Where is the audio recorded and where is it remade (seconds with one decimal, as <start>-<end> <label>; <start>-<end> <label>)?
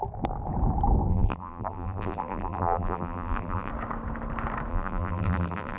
0.0-1.1 recorded; 1.1-3.7 remade; 3.7-4.7 recorded; 4.7-5.8 remade